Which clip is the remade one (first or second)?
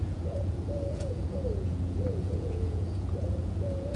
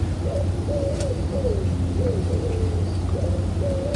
first